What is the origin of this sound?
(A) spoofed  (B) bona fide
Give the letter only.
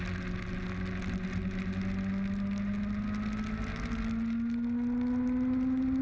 B